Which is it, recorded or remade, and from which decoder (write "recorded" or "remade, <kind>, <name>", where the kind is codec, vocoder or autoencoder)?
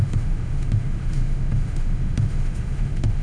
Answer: remade, autoencoder, DAC-VAE